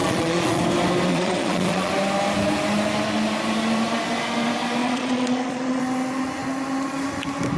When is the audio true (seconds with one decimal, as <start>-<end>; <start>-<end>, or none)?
0.6-1.1; 1.9-4.8; 5.8-7.6